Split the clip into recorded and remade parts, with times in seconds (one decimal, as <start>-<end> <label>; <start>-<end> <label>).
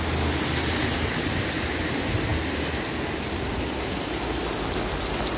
0.0-5.4 recorded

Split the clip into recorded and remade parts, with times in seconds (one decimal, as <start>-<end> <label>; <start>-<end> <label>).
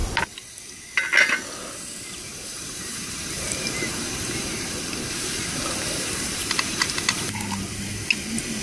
0.0-2.3 recorded; 2.3-7.0 remade; 7.0-8.6 recorded